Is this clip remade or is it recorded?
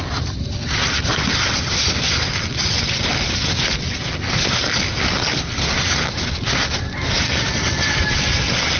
recorded